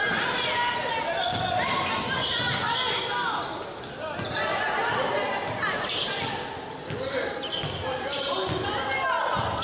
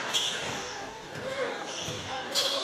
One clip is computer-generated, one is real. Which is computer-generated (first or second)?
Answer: second